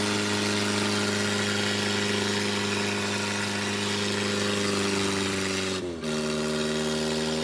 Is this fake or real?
real